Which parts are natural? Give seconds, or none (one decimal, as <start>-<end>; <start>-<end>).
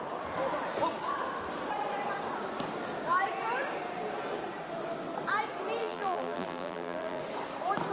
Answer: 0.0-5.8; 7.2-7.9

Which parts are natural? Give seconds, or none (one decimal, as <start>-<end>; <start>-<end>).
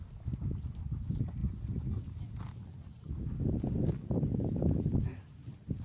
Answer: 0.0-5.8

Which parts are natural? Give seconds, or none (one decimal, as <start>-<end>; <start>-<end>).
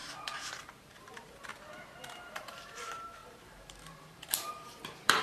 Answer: 1.5-2.2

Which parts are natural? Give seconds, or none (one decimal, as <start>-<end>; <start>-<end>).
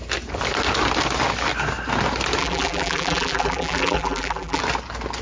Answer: 0.0-2.4; 4.6-5.2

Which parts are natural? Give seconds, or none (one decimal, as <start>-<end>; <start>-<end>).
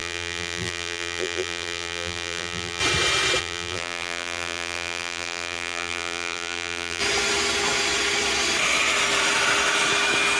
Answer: 2.8-3.4; 7.0-10.4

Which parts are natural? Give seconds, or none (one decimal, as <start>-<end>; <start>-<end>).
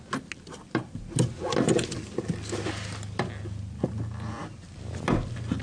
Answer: 0.0-5.6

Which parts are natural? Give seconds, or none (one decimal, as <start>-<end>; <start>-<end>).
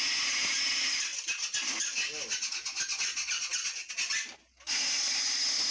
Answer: 0.0-5.7